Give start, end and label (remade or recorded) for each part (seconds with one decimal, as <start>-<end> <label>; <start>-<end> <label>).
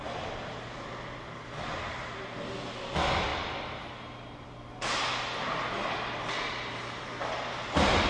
0.0-8.1 recorded